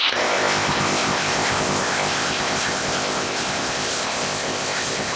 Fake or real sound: fake